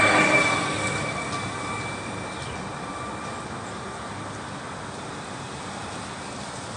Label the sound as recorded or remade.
recorded